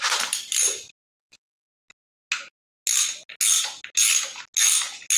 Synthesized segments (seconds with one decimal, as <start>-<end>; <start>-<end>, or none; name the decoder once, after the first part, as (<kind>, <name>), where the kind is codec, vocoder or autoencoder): none

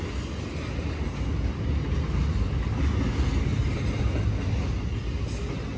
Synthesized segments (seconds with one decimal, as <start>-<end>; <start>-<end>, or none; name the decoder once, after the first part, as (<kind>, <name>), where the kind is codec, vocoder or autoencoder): none

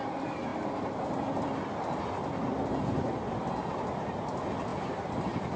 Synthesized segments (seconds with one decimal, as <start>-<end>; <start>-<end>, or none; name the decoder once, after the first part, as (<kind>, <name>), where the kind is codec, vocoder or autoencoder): none

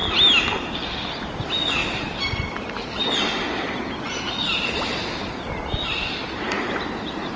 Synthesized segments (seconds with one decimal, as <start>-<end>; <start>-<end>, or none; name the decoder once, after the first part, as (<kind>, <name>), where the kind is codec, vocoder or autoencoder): none

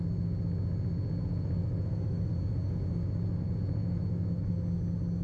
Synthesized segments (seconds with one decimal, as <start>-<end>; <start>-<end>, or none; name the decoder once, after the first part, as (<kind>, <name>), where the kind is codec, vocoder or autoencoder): 1.6-2.3 (autoencoder, DAC-VAE); 3.8-4.5